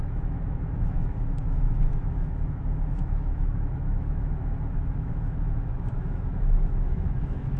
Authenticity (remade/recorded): remade